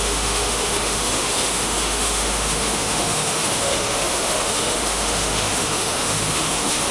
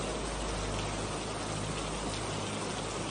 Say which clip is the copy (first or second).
first